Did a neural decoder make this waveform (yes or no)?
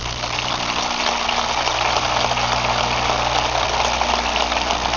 no